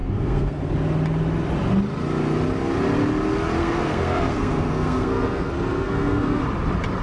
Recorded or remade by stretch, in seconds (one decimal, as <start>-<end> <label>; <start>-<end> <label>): 0.0-0.7 remade; 0.7-3.6 recorded; 3.6-6.4 remade; 6.4-7.0 recorded